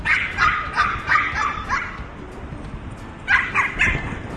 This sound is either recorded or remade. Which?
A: recorded